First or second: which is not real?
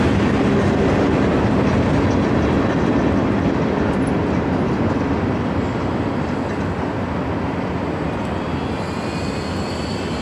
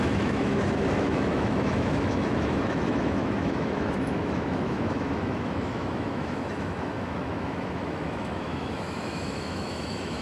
second